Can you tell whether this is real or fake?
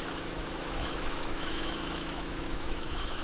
fake